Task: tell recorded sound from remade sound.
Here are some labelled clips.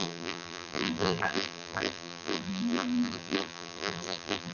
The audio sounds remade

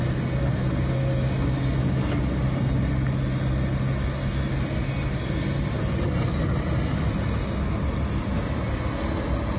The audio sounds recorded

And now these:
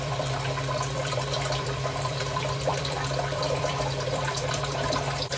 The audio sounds remade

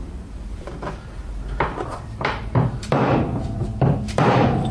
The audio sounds remade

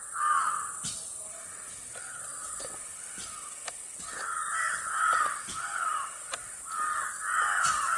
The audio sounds recorded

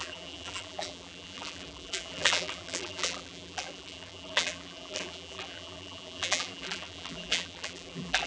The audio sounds remade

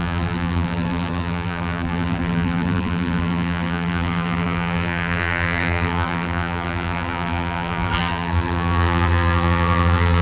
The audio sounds remade